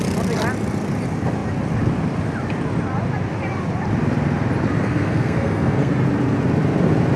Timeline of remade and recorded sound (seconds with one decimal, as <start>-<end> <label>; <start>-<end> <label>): 0.0-4.8 recorded; 4.8-5.9 remade; 5.9-7.2 recorded